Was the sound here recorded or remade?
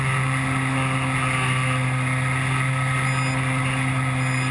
recorded